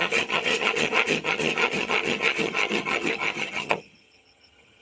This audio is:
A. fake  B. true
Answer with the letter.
A